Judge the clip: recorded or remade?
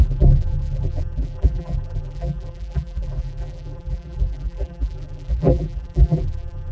remade